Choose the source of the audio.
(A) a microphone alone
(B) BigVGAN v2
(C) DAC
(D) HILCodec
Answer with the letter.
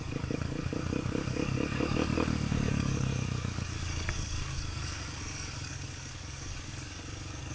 C